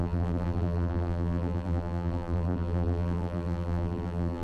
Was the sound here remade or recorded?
remade